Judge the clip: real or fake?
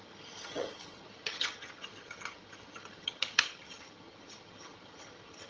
fake